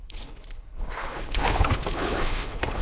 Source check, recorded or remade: remade